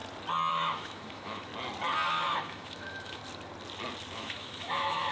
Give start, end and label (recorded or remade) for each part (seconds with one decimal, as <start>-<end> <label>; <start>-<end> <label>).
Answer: 0.0-0.5 recorded; 0.5-1.5 remade; 1.5-2.1 recorded; 2.1-3.2 remade; 3.2-4.1 recorded; 4.1-5.1 remade